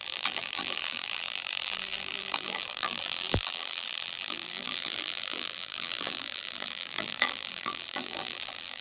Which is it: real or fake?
fake